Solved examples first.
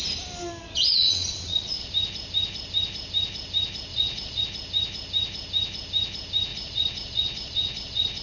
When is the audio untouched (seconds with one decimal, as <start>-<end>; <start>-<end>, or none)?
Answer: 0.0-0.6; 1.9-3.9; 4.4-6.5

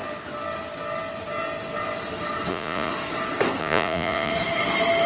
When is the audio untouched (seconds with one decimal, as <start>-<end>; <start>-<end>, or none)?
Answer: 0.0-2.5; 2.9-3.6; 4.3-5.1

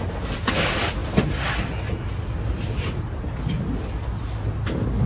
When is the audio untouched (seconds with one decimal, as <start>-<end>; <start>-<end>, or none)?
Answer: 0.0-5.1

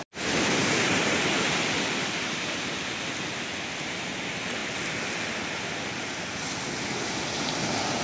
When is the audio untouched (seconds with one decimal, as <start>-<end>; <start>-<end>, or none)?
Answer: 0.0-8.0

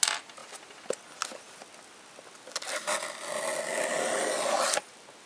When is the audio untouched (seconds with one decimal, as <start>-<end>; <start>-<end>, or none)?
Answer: 0.0-5.3

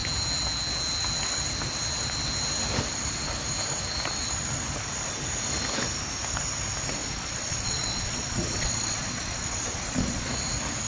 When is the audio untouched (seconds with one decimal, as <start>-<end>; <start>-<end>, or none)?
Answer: 0.0-7.0; 10.3-10.9